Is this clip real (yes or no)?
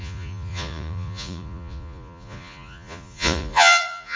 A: no